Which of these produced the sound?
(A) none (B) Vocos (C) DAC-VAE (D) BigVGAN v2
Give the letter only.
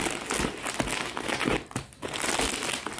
A